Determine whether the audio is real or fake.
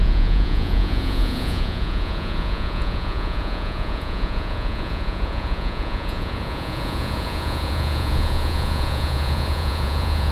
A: fake